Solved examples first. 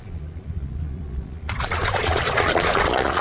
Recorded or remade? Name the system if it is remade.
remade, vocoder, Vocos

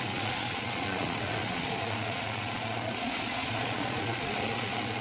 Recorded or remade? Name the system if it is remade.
remade, vocoder, Vocos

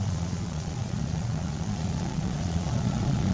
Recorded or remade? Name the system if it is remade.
remade, vocoder, Vocos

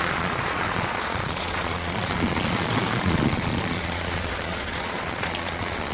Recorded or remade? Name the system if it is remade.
remade, vocoder, Vocos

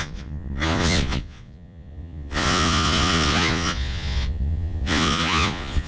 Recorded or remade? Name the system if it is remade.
remade, vocoder, Vocos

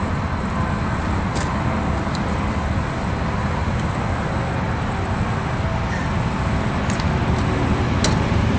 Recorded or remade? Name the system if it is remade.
recorded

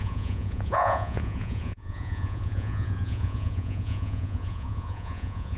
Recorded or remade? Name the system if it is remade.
remade, vocoder, Vocos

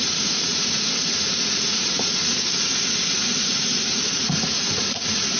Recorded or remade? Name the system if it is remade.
remade, vocoder, Vocos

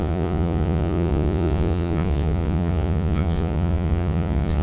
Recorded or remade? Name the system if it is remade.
remade, vocoder, Vocos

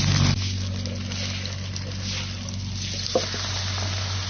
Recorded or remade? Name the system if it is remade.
recorded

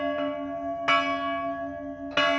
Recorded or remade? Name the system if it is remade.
recorded